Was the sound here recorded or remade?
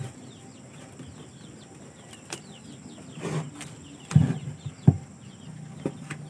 remade